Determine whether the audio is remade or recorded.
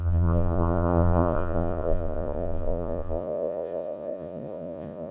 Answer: remade